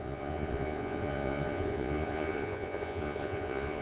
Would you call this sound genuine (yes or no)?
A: no